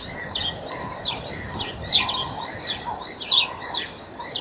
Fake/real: fake